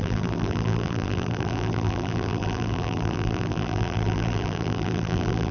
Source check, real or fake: fake